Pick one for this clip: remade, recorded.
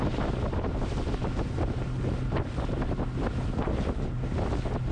recorded